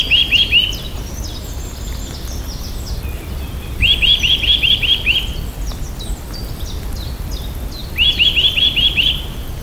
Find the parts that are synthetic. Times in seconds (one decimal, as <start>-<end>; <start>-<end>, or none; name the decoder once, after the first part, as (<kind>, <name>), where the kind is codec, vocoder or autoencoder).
none